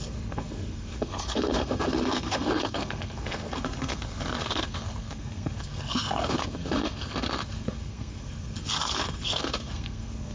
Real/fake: fake